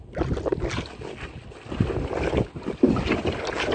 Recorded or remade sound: recorded